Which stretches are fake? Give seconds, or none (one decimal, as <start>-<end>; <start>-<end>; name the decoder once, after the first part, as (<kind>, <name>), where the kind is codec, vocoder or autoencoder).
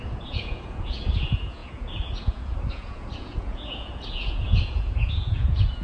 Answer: 0.0-5.8 (vocoder, Vocos)